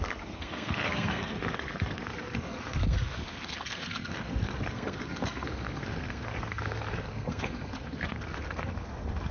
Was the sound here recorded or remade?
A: remade